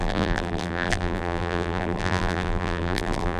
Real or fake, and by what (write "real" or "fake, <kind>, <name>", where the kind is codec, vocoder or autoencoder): fake, vocoder, BigVGAN v2